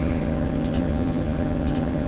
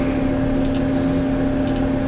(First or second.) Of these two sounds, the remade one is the first